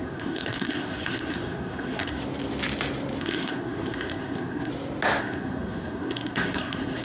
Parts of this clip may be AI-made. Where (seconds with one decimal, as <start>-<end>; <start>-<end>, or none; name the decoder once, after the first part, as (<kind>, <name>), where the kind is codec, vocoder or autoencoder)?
0.0-2.2 (codec, SNAC); 3.2-4.7; 5.2-7.0